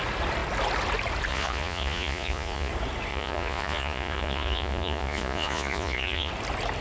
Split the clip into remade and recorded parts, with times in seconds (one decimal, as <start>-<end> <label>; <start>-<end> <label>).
0.0-1.3 recorded; 1.3-2.7 remade; 2.7-3.1 recorded; 3.1-6.3 remade; 6.3-6.8 recorded